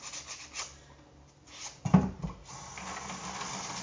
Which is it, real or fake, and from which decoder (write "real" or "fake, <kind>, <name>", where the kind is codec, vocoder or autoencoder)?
real